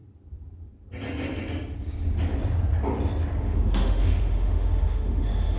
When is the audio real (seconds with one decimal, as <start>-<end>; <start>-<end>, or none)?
0.0-3.4